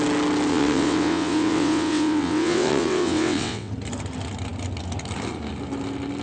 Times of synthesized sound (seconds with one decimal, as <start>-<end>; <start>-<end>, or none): 0.5-3.7